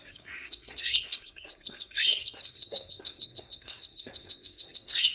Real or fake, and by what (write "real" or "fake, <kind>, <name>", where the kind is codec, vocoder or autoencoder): fake, codec, SNAC